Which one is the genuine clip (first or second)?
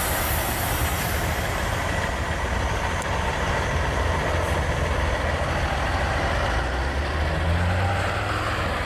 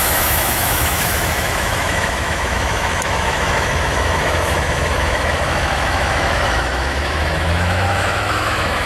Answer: first